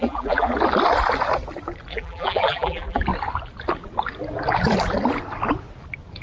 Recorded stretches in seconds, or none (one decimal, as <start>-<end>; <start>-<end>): 0.5-1.9; 3.0-6.2